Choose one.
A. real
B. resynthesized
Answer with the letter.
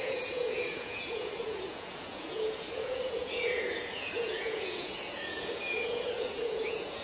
B